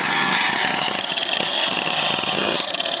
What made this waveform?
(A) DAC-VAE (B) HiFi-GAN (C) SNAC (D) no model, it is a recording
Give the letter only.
B